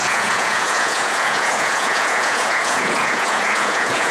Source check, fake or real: fake